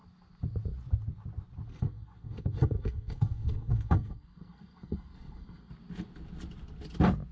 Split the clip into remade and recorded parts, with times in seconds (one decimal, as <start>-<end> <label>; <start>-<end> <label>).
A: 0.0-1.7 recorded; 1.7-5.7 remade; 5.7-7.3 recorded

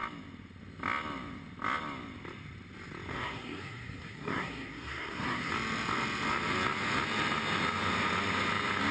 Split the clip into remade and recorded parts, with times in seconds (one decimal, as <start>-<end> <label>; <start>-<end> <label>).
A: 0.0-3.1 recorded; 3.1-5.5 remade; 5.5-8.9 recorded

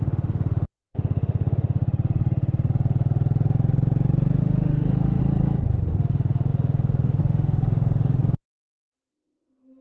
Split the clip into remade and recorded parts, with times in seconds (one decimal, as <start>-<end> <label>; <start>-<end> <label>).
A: 0.0-1.8 remade; 1.8-4.4 recorded; 4.4-5.2 remade; 5.2-5.9 recorded; 5.9-8.2 remade; 8.2-9.1 recorded; 9.1-9.8 remade

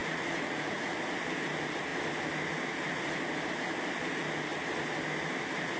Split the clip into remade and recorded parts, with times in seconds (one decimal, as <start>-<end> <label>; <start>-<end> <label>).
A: 0.0-1.0 remade; 1.0-5.8 recorded

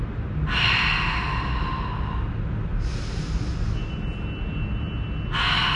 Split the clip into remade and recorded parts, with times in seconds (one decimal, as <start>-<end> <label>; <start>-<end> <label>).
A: 0.0-5.8 recorded